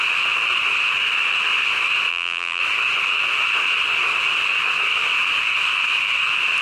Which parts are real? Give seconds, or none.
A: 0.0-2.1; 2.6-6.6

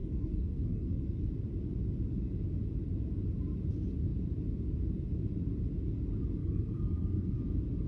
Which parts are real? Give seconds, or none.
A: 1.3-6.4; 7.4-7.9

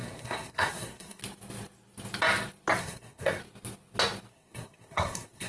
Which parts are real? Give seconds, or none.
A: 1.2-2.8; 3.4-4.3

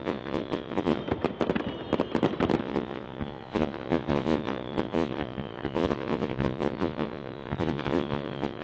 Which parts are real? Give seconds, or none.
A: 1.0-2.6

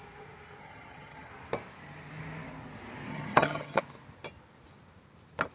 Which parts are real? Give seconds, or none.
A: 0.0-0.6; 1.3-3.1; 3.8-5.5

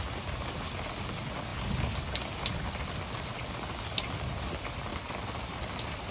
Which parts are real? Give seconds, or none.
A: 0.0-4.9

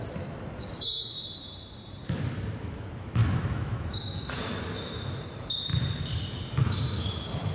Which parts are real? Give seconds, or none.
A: 1.1-2.6; 5.7-6.5